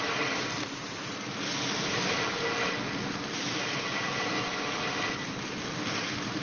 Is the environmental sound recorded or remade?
recorded